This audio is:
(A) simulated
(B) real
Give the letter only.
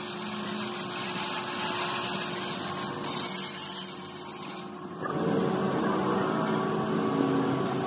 B